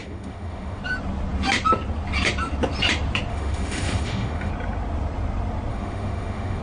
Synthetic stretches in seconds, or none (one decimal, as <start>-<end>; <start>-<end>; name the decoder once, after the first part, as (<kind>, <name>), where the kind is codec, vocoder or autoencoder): 0.0-0.8 (autoencoder, DAC-VAE); 3.3-4.5; 5.7-6.6

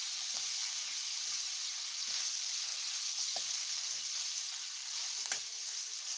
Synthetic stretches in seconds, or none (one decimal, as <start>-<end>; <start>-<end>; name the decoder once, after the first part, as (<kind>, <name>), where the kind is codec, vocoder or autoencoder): 0.0-1.7 (vocoder, BigVGAN v2); 2.7-4.2; 4.8-6.2